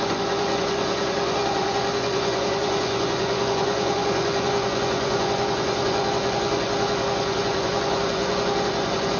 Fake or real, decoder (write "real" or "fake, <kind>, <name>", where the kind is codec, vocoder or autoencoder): fake, vocoder, Vocos